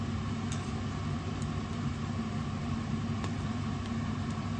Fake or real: real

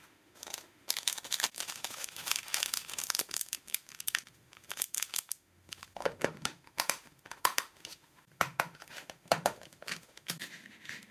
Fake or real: fake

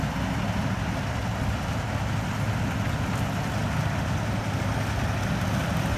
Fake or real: real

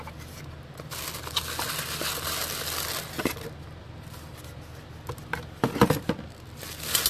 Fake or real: real